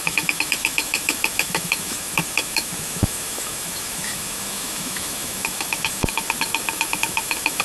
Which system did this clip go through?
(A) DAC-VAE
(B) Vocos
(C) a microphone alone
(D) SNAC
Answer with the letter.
A